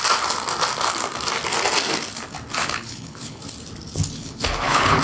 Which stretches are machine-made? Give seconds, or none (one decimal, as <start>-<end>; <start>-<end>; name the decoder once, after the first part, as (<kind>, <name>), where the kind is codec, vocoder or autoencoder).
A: 2.6-3.4 (codec, HILCodec); 4.2-5.0